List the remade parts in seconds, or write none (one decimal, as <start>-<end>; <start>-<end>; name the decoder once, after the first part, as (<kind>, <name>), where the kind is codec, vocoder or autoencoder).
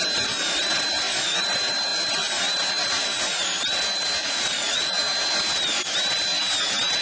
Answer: 4.2-5.0 (vocoder, Vocos)